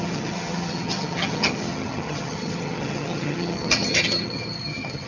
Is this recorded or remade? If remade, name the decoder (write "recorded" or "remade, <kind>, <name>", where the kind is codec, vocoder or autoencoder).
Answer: remade, vocoder, HiFi-GAN